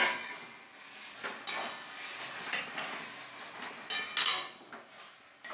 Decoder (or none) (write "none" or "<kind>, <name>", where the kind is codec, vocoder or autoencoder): none